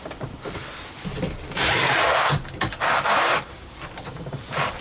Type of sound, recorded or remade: remade